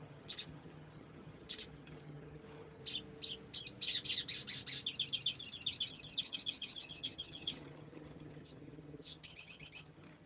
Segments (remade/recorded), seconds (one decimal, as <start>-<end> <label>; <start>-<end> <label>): 0.0-2.8 remade; 2.8-5.9 recorded; 5.9-10.3 remade